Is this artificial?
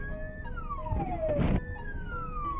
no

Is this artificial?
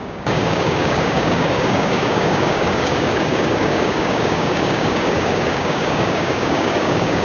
yes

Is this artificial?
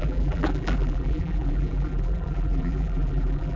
yes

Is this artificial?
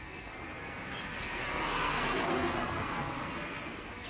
yes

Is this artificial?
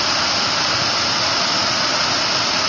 no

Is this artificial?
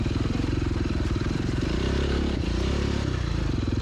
yes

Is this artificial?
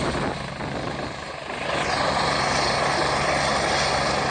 no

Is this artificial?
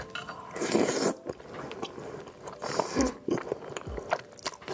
no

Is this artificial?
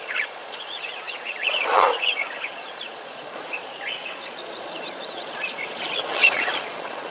yes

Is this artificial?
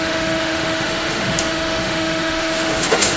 yes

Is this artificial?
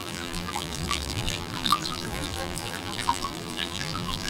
yes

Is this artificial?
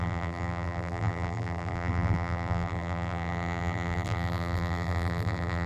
yes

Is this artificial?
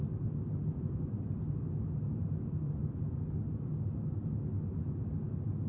no